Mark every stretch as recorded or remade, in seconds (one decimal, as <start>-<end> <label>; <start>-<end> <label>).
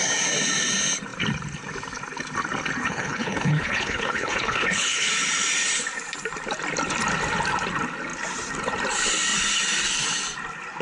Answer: 0.0-2.8 recorded; 2.8-5.1 remade; 5.1-10.8 recorded